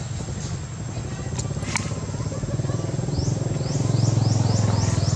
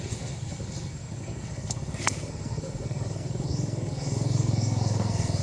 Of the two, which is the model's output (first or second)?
second